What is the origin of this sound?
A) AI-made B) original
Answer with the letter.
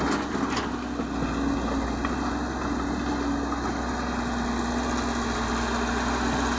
B